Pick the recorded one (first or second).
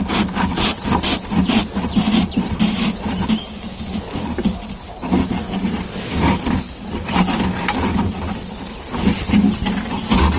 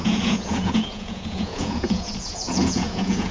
first